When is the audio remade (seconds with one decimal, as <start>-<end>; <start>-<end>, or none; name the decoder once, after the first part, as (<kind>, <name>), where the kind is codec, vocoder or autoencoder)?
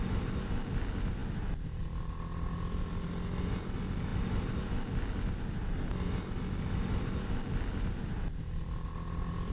none